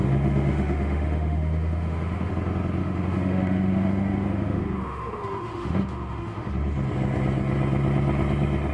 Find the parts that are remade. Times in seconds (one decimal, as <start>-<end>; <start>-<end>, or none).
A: 0.0-2.3; 2.8-6.5